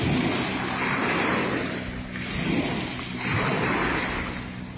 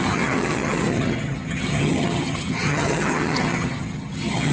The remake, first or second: second